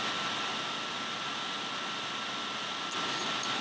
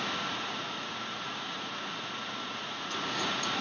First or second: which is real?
first